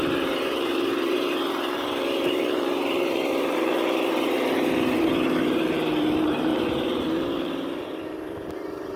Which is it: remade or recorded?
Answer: remade